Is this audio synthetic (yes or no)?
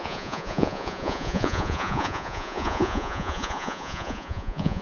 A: yes